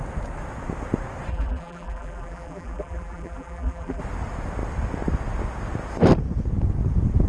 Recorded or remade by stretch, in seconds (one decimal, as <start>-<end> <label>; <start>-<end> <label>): 0.0-1.3 recorded; 1.3-4.0 remade; 4.0-7.3 recorded